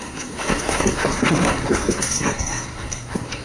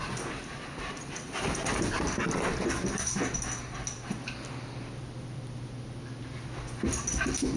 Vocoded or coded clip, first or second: first